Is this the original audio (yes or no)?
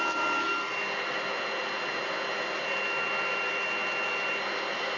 yes